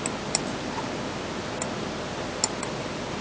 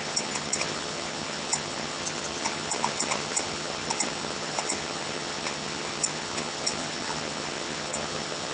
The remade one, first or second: second